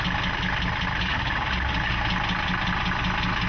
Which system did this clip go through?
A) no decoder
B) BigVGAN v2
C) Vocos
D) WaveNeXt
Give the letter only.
A